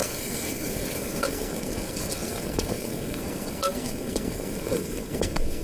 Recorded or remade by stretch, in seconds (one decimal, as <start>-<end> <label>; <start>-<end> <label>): 0.0-5.6 remade